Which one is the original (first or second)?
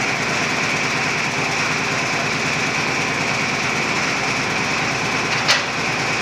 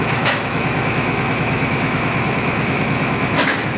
first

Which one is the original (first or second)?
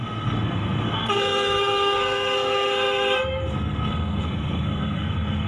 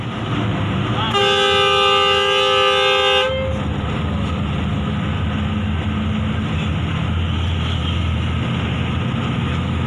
second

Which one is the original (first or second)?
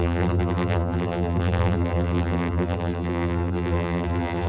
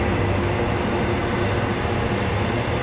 second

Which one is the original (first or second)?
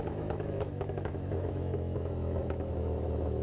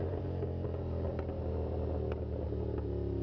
second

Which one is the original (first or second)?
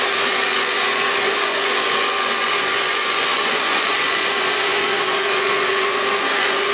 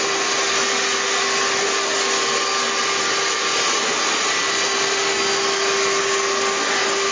second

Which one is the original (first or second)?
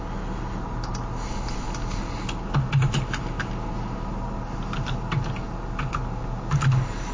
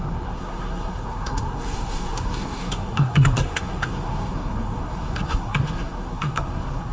first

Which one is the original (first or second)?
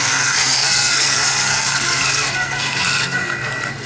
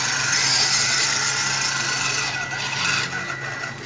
second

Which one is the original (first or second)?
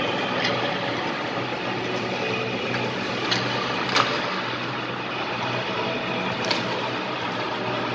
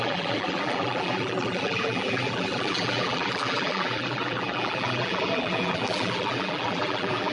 first